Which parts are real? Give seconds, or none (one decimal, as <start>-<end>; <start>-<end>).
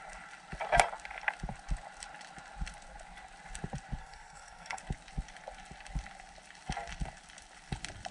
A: 0.0-4.0; 4.8-8.1